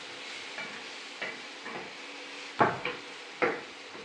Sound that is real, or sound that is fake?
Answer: fake